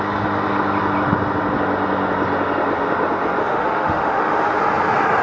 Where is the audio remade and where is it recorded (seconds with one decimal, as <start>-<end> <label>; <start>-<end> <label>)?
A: 0.0-3.4 recorded; 3.4-4.6 remade; 4.6-5.2 recorded

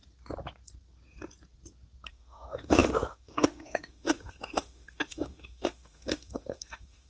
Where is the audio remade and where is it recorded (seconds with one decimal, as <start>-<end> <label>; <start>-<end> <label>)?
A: 0.0-2.1 recorded; 2.1-7.1 remade

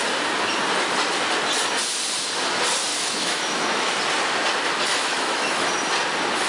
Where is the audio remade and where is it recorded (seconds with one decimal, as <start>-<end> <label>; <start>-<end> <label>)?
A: 0.0-2.9 recorded; 2.9-3.9 remade; 3.9-4.9 recorded; 4.9-5.7 remade; 5.7-6.5 recorded

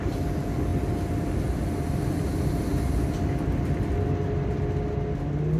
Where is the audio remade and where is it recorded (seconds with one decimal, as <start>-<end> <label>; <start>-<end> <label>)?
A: 0.0-5.6 recorded

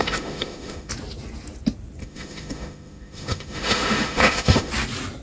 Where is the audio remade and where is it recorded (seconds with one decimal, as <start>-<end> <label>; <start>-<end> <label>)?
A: 0.0-0.9 remade; 0.9-2.0 recorded; 2.0-4.7 remade; 4.7-5.2 recorded